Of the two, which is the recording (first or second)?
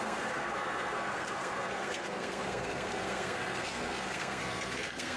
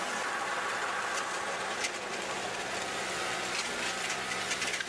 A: second